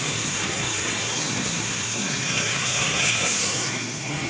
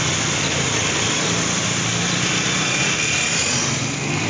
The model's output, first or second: first